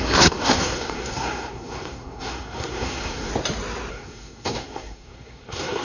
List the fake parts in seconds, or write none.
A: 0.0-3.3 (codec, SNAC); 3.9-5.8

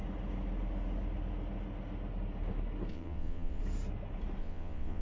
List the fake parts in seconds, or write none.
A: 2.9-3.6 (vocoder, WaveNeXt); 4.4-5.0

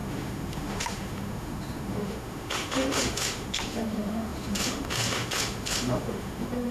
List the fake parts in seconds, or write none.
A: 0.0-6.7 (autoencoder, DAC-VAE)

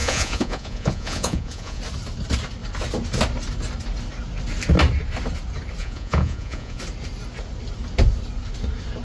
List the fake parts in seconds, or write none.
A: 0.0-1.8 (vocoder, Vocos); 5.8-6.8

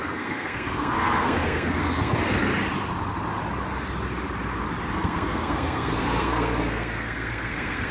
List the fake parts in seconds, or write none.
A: 0.0-2.5 (codec, SNAC); 4.9-7.9